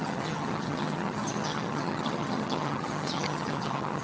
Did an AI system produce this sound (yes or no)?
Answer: yes